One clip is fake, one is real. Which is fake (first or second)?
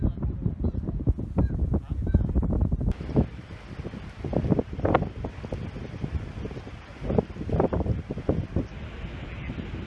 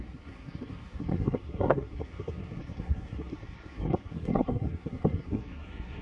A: second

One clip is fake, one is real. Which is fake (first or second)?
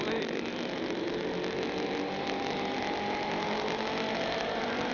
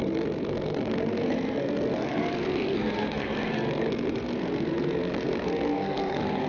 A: second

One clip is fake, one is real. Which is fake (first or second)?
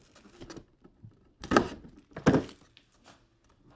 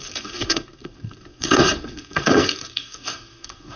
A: second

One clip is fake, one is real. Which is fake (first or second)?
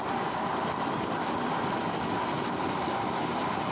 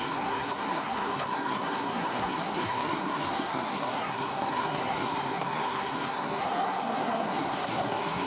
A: second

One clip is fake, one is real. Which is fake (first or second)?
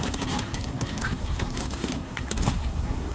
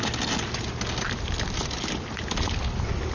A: first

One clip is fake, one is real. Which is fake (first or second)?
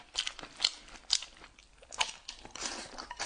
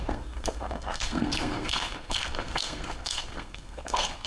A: second